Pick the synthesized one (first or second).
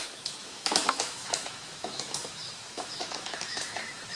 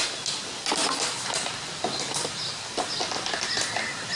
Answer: first